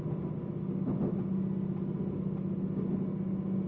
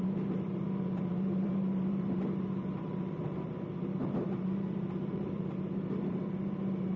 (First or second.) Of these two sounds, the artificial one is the second